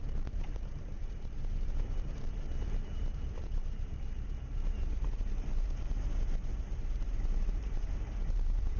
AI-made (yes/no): yes